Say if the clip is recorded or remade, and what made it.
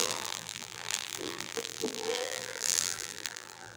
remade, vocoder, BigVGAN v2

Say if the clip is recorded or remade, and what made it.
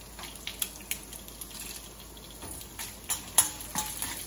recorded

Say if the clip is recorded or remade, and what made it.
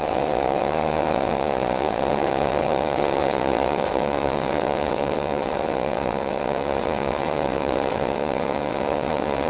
remade, vocoder, WaveNeXt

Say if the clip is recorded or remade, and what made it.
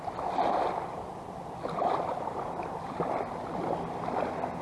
recorded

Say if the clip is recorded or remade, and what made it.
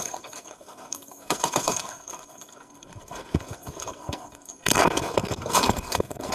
remade, codec, SNAC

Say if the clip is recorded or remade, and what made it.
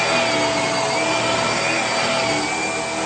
recorded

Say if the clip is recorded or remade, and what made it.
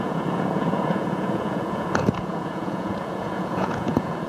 remade, vocoder, Vocos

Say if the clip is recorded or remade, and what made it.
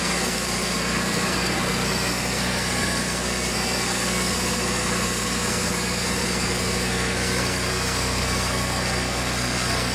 remade, codec, SNAC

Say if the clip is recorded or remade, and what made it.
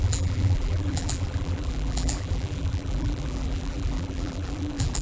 remade, vocoder, BigVGAN v2